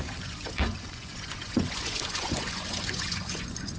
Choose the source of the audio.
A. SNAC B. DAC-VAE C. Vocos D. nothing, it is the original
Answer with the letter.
C